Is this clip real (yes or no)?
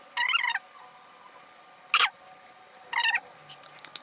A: yes